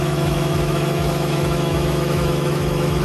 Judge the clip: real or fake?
fake